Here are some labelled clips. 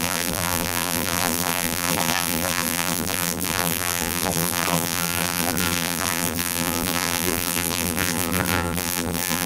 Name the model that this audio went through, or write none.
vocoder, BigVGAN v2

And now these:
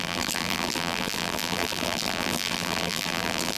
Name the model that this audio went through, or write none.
vocoder, BigVGAN v2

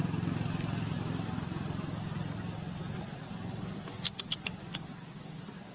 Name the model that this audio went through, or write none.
none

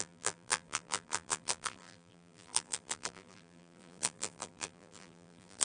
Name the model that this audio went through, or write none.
vocoder, BigVGAN v2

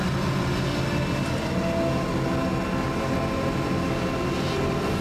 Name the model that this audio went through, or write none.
none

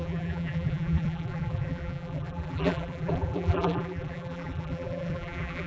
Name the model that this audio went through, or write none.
vocoder, BigVGAN v2